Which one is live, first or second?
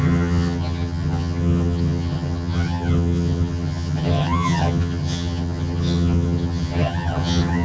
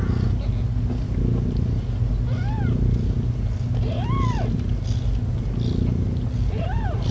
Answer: second